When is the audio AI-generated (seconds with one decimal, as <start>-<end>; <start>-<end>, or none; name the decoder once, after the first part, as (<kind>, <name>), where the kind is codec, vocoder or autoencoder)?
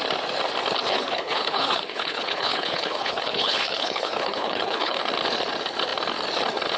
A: 0.9-5.0 (codec, HILCodec)